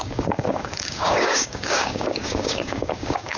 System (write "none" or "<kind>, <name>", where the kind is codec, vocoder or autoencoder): codec, DAC